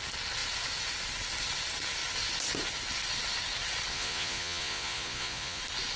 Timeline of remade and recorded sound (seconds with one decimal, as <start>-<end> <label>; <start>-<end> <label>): 0.0-3.9 recorded; 3.9-5.6 remade; 5.6-6.0 recorded